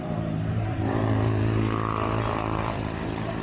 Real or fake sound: fake